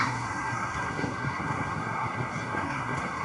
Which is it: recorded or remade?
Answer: remade